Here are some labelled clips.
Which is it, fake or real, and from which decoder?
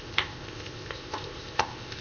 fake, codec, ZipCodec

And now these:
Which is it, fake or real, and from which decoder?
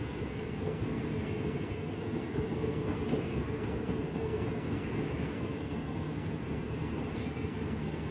fake, codec, SNAC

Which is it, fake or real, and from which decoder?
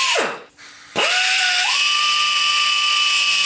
real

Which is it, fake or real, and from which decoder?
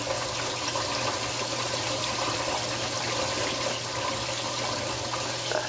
real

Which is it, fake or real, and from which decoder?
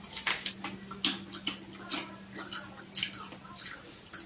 real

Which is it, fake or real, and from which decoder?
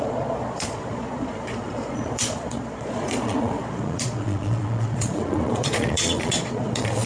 fake, vocoder, Vocos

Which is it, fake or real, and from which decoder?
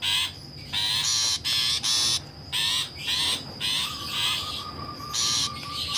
real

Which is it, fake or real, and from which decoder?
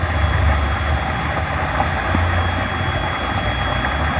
real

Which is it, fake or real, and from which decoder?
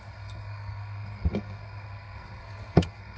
fake, codec, SNAC